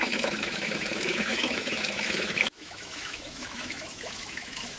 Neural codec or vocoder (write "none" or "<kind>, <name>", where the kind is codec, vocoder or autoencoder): autoencoder, DAC-VAE